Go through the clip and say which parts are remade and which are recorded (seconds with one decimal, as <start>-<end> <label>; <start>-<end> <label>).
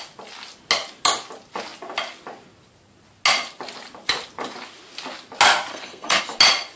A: 0.0-5.7 recorded; 5.7-6.2 remade; 6.2-6.8 recorded